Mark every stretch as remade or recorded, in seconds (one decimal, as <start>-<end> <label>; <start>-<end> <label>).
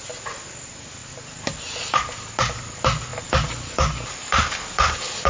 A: 0.0-5.3 recorded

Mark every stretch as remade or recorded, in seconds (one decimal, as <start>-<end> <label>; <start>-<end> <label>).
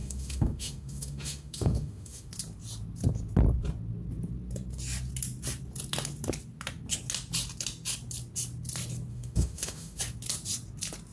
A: 0.0-2.3 remade; 2.3-9.1 recorded; 9.1-10.0 remade; 10.0-11.1 recorded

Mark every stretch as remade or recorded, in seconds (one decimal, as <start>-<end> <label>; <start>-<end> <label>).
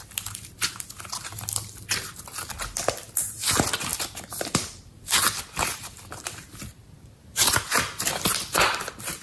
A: 0.0-9.2 recorded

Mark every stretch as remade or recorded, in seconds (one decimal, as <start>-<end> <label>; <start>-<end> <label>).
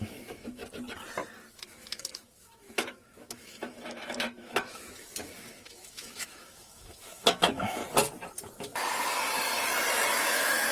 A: 0.0-0.6 remade; 0.6-1.5 recorded; 1.5-7.8 remade; 7.8-10.2 recorded; 10.2-10.7 remade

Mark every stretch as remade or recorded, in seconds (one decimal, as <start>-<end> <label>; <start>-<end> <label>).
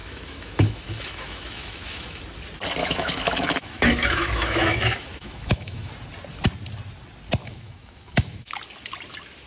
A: 0.0-2.2 remade; 2.2-2.8 recorded; 2.8-5.9 remade; 5.9-7.4 recorded; 7.4-8.5 remade; 8.5-9.5 recorded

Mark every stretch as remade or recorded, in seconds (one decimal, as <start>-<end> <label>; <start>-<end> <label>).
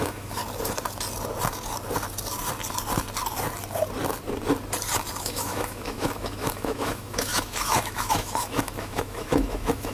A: 0.0-0.4 remade; 0.4-5.2 recorded; 5.2-9.9 remade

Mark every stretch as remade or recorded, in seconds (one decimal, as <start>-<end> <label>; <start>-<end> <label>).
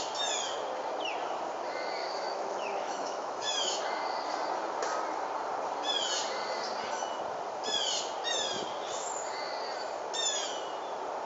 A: 0.0-2.0 recorded; 2.0-3.8 remade; 3.8-11.3 recorded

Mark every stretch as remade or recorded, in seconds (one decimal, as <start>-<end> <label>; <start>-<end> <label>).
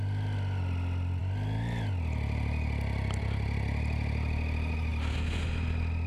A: 0.0-6.1 recorded